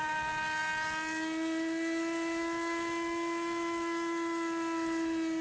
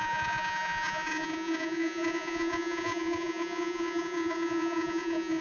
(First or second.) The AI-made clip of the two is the second